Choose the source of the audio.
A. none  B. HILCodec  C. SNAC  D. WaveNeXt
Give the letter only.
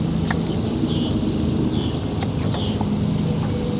A